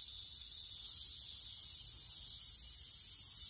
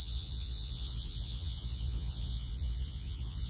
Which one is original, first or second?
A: first